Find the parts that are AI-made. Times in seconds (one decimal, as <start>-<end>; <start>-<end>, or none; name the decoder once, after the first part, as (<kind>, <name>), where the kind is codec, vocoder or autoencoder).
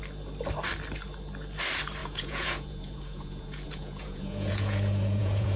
2.0-5.6 (vocoder, Vocos)